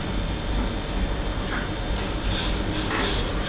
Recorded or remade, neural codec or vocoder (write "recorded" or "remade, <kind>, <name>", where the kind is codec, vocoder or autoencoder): recorded